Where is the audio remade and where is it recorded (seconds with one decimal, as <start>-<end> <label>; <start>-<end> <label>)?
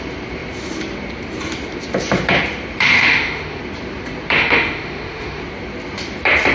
0.0-2.9 recorded; 2.9-3.6 remade; 3.6-4.4 recorded; 4.4-5.4 remade; 5.4-6.5 recorded